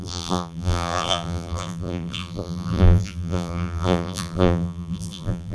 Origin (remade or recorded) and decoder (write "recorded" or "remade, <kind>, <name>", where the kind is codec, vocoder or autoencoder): remade, vocoder, BigVGAN v2